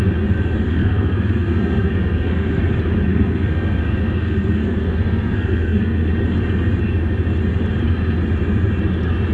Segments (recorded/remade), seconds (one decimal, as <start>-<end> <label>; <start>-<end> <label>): 0.0-0.7 recorded; 0.7-2.6 remade; 2.6-3.1 recorded; 3.1-6.1 remade; 6.1-9.3 recorded